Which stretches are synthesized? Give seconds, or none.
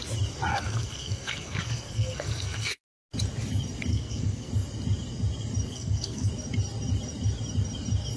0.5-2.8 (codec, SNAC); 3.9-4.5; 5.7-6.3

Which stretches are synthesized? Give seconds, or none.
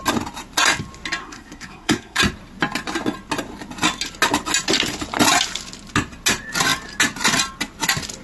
1.2-2.2 (codec, SNAC)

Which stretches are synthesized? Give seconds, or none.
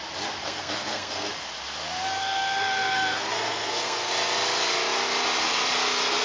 0.4-1.3 (codec, SNAC); 2.2-4.1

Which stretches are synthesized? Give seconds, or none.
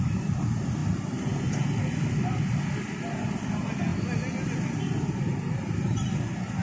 none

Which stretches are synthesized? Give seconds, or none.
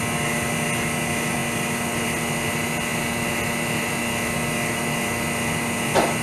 none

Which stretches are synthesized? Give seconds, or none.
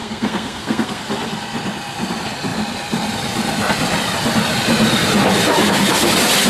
0.0-1.0 (codec, SNAC)